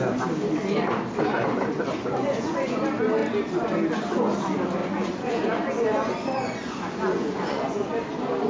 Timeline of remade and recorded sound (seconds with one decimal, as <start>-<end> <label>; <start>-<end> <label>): 0.0-2.0 recorded; 2.0-2.8 remade; 2.8-4.8 recorded; 4.8-7.9 remade; 7.9-8.5 recorded

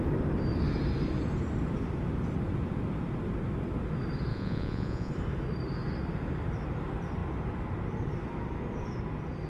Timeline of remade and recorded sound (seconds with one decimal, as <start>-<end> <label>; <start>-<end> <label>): 0.0-4.3 recorded; 4.3-5.1 remade; 5.1-9.5 recorded

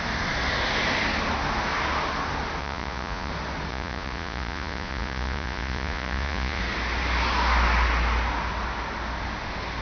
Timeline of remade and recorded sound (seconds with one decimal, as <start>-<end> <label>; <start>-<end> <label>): 0.0-2.6 recorded; 2.6-3.3 remade; 3.3-3.7 recorded; 3.7-6.6 remade; 6.6-9.8 recorded

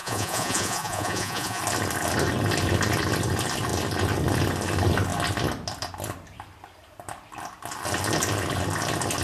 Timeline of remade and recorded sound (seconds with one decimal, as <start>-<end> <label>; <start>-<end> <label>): 0.0-1.6 remade; 1.6-9.2 recorded